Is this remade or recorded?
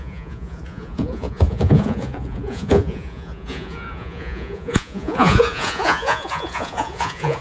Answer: remade